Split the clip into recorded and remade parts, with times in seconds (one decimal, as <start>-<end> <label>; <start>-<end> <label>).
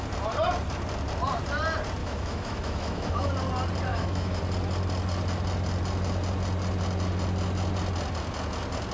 0.0-2.0 recorded; 2.0-3.3 remade; 3.3-3.9 recorded; 3.9-4.4 remade; 4.4-8.9 recorded